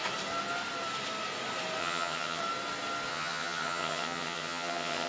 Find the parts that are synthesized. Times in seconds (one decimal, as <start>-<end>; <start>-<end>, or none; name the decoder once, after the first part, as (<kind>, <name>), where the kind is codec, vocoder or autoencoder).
1.8-2.4 (vocoder, HiFi-GAN); 3.1-5.1